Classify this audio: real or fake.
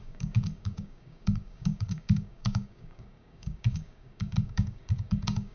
fake